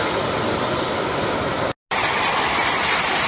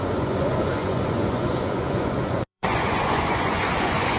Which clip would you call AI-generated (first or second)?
second